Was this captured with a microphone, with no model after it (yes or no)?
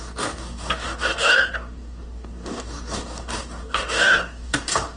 no